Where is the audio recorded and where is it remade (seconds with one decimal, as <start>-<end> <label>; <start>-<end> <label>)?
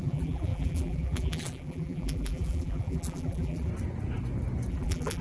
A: 0.0-3.7 remade; 3.7-4.7 recorded; 4.7-5.2 remade